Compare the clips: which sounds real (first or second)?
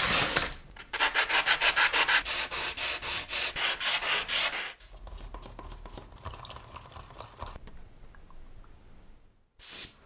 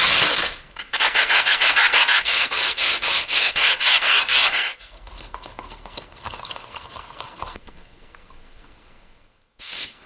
first